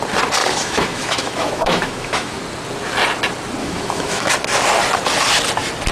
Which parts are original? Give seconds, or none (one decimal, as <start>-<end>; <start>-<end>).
0.0-0.4; 2.4-3.6; 4.3-5.9